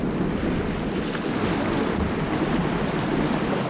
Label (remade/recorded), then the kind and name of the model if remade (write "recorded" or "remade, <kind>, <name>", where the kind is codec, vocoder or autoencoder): recorded